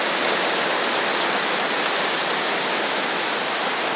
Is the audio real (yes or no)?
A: yes